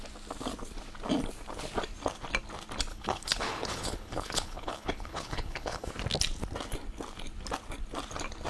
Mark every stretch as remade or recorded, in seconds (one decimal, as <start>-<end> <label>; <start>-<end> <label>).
0.0-2.9 recorded; 2.9-5.9 remade; 5.9-8.5 recorded